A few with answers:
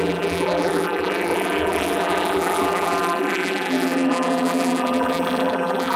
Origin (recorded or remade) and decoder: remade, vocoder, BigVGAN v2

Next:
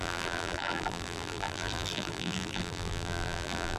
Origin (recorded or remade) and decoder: remade, vocoder, BigVGAN v2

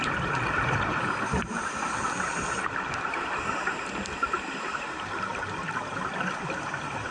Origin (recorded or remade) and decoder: remade, vocoder, BigVGAN v2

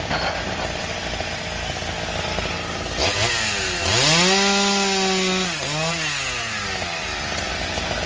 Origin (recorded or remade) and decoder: recorded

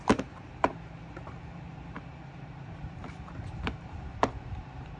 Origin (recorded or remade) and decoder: remade, vocoder, BigVGAN v2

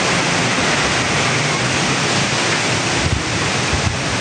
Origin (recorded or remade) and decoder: recorded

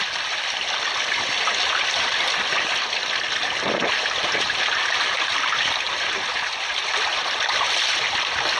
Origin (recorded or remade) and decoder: recorded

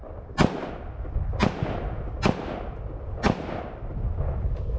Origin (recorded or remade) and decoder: recorded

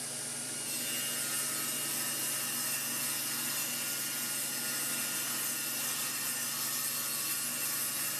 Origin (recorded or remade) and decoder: recorded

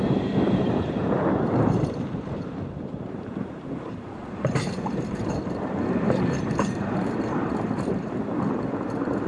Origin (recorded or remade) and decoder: remade, vocoder, BigVGAN v2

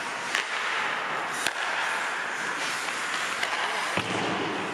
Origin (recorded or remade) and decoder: recorded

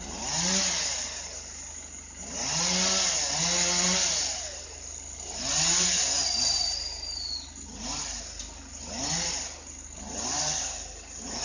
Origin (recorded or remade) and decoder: recorded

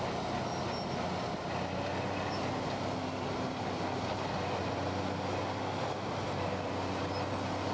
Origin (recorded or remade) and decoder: recorded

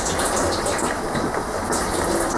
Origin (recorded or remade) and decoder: remade, vocoder, BigVGAN v2